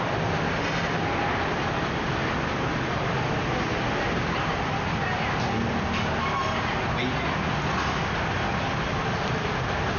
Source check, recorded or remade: recorded